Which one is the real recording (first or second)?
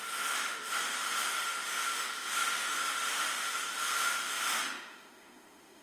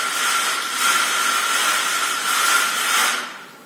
second